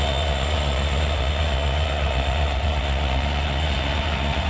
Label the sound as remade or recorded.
remade